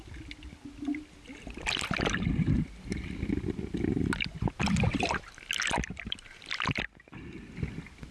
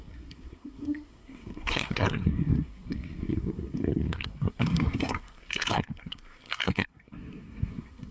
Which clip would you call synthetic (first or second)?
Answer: second